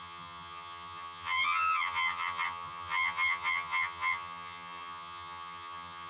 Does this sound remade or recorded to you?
remade